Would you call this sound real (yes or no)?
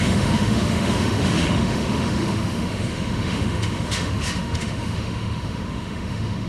no